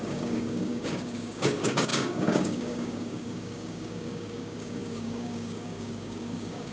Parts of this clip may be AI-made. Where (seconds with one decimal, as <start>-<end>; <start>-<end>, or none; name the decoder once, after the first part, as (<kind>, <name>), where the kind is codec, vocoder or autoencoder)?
0.0-6.7 (codec, DAC)